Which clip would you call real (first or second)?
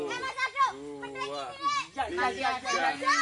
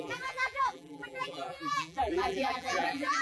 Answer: first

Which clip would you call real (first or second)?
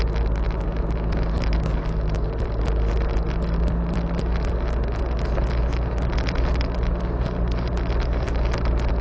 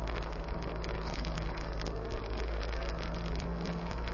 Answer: first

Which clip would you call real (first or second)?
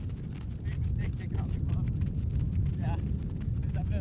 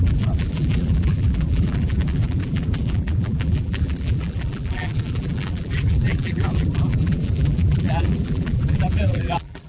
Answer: first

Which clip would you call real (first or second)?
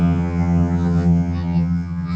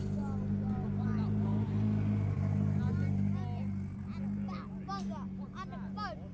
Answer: second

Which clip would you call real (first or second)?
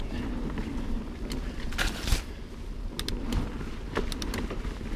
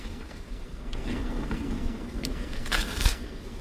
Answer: first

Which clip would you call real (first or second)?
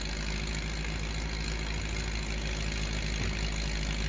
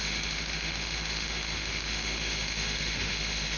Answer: first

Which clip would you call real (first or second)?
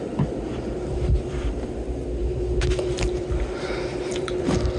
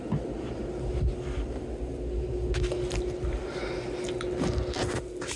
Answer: second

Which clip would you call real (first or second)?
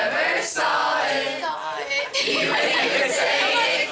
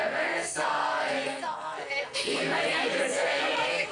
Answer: first